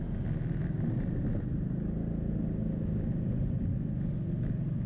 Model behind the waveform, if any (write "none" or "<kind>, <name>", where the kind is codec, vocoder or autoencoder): none